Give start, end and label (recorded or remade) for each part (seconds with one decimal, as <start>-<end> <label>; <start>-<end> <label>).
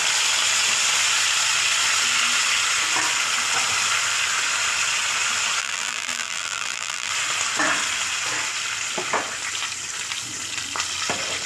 0.0-5.6 recorded; 5.6-7.1 remade; 7.1-11.5 recorded